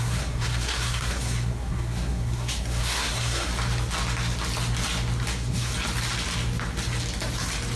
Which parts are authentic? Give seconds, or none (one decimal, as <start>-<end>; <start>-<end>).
3.5-5.3; 5.7-7.8